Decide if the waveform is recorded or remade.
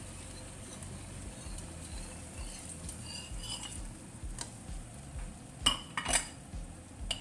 recorded